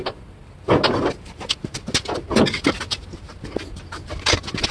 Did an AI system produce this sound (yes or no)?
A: no